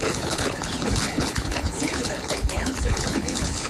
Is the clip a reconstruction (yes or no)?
yes